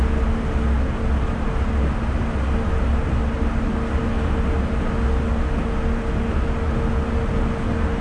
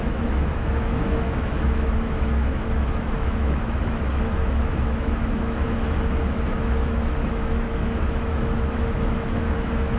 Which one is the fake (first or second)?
second